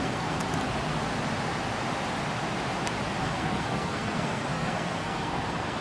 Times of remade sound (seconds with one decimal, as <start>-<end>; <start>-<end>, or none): 0.0-0.4; 3.2-5.8